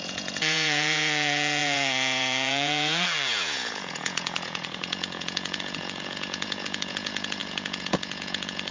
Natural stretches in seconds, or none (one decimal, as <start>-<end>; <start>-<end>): none